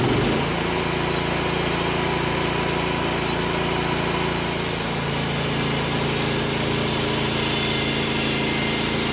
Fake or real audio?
real